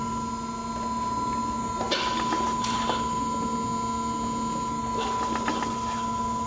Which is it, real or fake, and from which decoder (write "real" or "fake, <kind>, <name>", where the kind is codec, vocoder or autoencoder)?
real